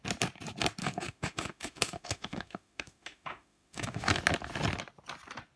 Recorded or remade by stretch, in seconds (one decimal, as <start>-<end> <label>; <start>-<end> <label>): 0.0-0.8 recorded; 0.8-4.2 remade; 4.2-5.6 recorded